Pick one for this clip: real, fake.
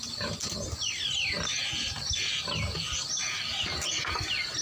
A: real